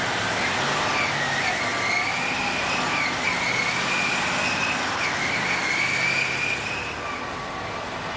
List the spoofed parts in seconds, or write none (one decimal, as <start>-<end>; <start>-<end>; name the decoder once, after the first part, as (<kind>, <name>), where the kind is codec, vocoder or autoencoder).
none